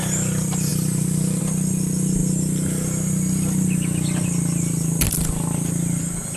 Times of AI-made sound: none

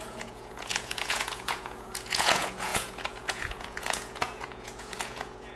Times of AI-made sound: 0.0-5.6 (vocoder, Vocos)

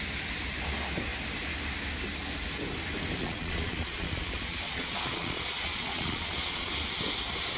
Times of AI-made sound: 3.2-6.7 (vocoder, Vocos)

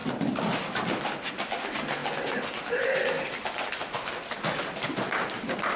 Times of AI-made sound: none

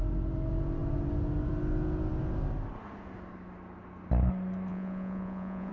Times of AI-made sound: 4.7-5.7 (vocoder, Vocos)

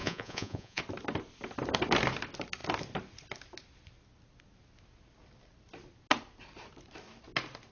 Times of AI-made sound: 0.0-0.8 (vocoder, Vocos)

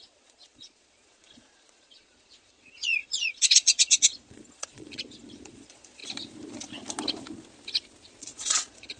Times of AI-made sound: 0.0-6.0 (vocoder, Vocos); 8.2-9.0

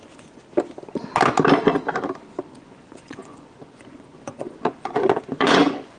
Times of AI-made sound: 0.0-0.4 (vocoder, Vocos); 2.5-6.0